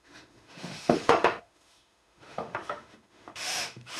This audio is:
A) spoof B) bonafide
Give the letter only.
A